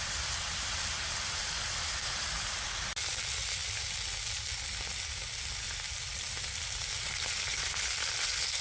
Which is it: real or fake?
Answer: real